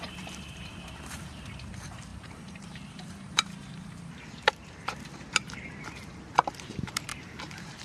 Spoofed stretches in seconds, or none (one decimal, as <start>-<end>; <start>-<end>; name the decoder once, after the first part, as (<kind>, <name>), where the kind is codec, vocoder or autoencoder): 0.0-7.8 (vocoder, BigVGAN v2)